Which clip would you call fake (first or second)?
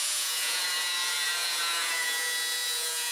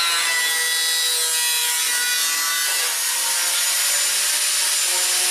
first